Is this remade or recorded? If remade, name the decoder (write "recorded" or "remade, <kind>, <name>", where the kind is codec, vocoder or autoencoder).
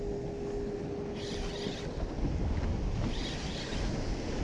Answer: recorded